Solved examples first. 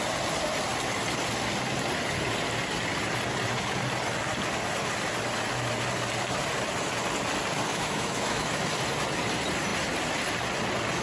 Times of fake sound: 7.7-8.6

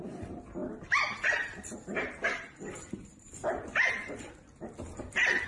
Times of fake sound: none